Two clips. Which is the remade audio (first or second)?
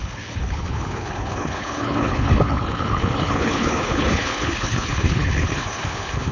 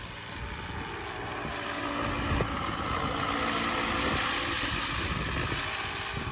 first